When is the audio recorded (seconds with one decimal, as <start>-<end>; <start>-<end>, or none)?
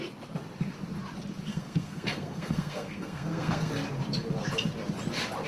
0.0-1.5; 3.7-5.5